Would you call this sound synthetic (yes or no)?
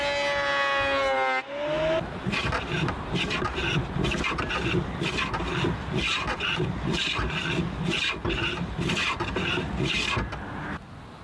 no